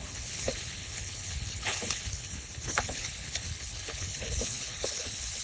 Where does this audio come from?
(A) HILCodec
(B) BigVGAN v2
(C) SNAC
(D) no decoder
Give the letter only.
A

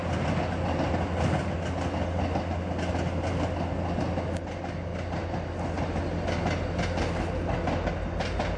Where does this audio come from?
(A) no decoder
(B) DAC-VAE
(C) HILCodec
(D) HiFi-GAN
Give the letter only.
A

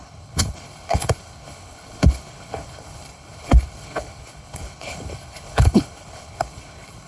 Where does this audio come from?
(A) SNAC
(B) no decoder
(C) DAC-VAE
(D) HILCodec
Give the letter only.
D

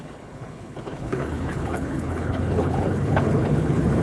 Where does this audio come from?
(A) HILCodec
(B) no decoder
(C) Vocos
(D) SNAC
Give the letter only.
A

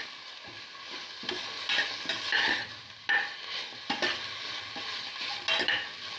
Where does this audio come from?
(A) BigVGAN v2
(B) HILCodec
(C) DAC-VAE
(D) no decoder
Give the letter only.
D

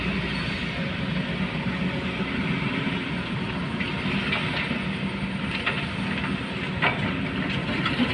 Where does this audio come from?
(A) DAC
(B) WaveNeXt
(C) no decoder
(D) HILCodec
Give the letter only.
C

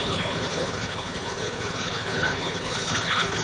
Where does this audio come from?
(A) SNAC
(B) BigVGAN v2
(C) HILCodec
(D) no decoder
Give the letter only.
C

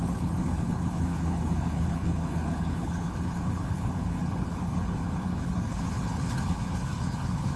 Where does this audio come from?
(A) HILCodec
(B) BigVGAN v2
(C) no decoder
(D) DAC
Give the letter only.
A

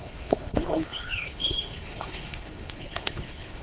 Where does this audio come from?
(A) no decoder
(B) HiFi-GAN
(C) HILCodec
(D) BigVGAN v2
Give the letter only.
C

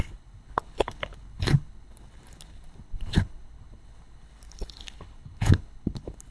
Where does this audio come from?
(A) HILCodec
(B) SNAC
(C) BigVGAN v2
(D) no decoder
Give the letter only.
A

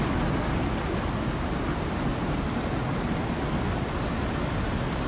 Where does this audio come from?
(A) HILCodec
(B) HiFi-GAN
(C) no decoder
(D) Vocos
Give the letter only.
C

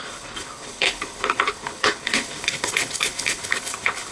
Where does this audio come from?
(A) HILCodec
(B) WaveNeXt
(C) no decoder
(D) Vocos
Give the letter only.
A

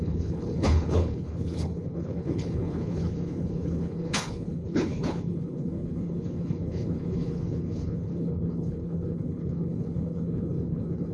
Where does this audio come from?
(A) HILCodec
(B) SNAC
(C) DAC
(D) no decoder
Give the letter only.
A